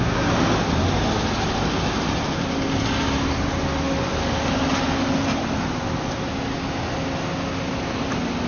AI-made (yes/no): no